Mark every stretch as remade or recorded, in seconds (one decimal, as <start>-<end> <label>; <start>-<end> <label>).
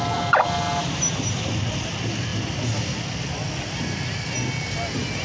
0.0-5.2 recorded